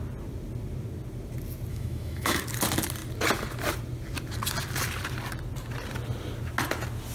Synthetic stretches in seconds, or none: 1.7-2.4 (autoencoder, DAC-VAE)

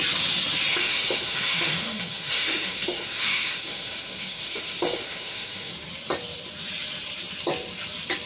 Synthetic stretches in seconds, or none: 0.7-5.7 (autoencoder, DAC-VAE)

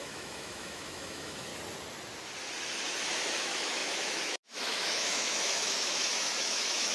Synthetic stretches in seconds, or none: 0.0-1.5 (autoencoder, DAC-VAE); 3.4-6.9

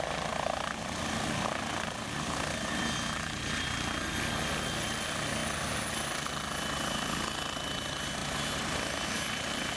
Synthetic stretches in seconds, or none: none